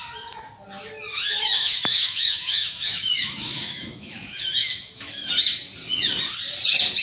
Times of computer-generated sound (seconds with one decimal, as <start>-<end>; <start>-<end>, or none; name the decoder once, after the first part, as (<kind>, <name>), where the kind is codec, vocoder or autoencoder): 1.1-5.3 (autoencoder, DAC-VAE)